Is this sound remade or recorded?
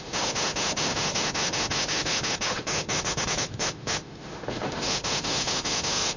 remade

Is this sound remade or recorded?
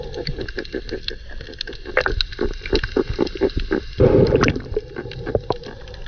recorded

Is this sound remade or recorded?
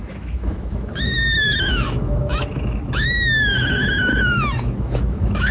remade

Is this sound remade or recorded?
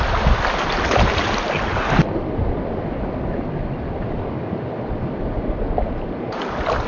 recorded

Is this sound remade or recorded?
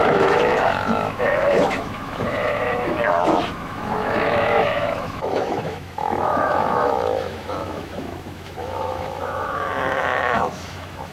remade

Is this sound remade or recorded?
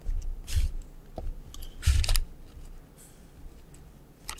recorded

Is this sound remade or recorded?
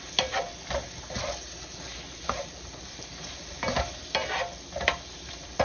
recorded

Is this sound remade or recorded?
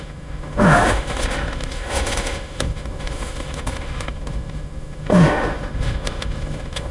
remade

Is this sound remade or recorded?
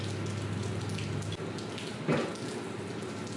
recorded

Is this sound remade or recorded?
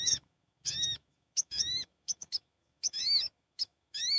remade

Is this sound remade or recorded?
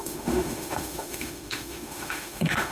remade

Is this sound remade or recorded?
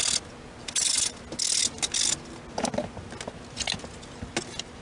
recorded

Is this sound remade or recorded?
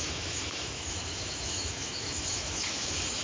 remade